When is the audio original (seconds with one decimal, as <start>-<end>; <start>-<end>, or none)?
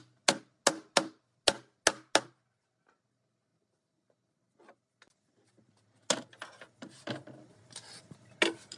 0.0-8.8